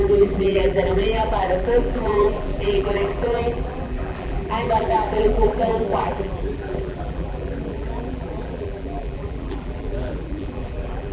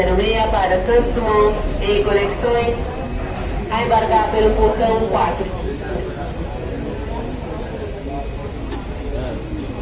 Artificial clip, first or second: first